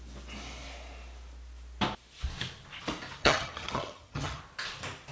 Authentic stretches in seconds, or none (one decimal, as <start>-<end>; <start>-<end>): 0.0-3.2; 4.4-5.1